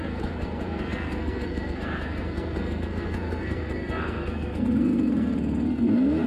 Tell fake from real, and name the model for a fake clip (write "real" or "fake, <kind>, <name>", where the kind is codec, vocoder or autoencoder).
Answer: fake, codec, SNAC